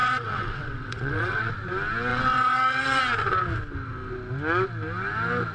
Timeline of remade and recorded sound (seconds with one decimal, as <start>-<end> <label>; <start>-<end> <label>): 0.0-1.5 remade; 1.5-2.1 recorded; 2.1-3.0 remade; 3.0-5.5 recorded

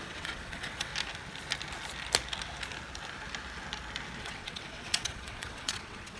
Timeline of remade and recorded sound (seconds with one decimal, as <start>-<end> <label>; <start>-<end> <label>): 0.0-0.9 remade; 0.9-4.2 recorded; 4.2-6.2 remade